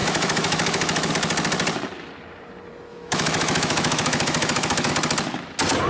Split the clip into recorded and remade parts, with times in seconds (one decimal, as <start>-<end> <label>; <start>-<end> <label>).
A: 0.0-1.1 remade; 1.1-2.9 recorded; 2.9-4.9 remade; 4.9-5.9 recorded